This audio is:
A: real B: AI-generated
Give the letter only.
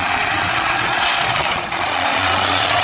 B